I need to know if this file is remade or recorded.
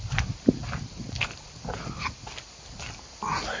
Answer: recorded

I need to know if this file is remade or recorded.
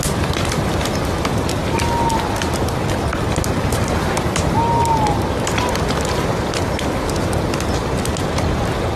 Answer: recorded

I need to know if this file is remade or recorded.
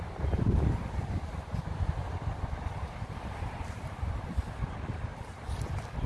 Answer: remade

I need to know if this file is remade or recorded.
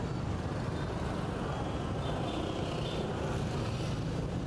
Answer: recorded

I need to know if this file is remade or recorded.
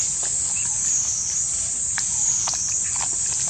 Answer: remade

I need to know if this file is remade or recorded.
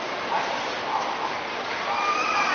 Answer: remade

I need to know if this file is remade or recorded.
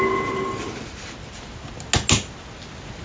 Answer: recorded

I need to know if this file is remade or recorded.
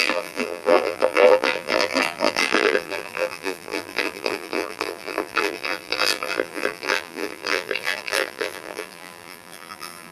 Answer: remade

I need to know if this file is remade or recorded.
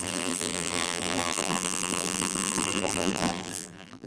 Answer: remade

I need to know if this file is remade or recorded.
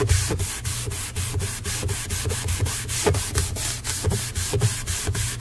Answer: recorded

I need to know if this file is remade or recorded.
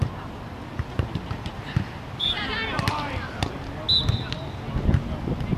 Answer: recorded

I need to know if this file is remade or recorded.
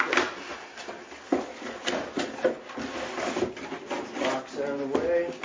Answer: recorded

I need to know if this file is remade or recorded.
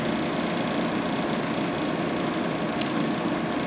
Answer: recorded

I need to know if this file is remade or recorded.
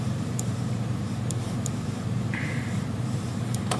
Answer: remade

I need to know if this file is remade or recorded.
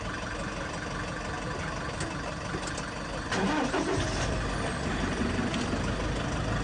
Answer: recorded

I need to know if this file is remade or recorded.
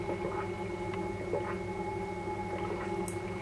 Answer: recorded